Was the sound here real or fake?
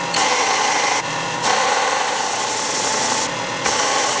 real